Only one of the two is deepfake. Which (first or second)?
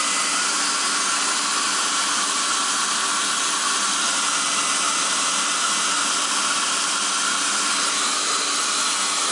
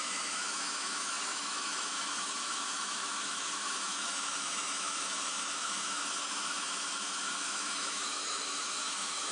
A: second